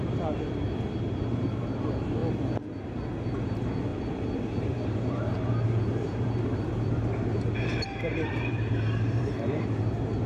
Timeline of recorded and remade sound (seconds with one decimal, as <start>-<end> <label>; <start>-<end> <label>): 0.0-2.2 remade; 2.2-3.4 recorded; 3.4-10.3 remade

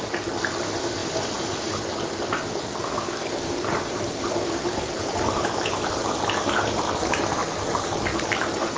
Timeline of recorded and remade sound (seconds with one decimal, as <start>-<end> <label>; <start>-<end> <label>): 0.0-1.0 recorded; 1.0-5.9 remade; 5.9-8.8 recorded

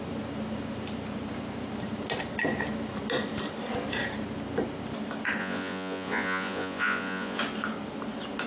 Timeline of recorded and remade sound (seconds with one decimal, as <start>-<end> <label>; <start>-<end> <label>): 0.0-5.4 recorded; 5.4-7.4 remade; 7.4-8.5 recorded

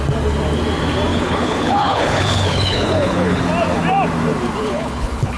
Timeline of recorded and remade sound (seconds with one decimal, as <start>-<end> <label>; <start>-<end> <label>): 0.0-1.1 recorded; 1.1-3.4 remade; 3.4-4.6 recorded; 4.6-5.4 remade

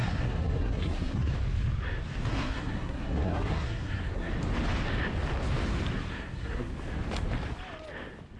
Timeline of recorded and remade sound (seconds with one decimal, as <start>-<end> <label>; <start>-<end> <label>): 0.0-1.3 remade; 1.3-2.3 recorded; 2.3-4.3 remade; 4.3-6.1 recorded; 6.1-6.7 remade; 6.7-8.4 recorded

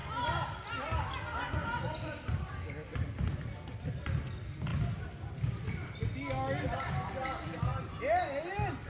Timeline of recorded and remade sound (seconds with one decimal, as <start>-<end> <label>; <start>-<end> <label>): 0.0-8.9 recorded